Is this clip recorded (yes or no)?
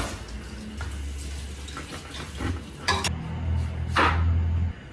yes